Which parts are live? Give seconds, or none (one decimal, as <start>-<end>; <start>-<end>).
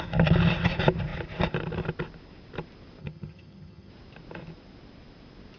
0.0-3.0; 3.9-5.6